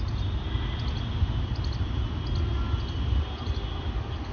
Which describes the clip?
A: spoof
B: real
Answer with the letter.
B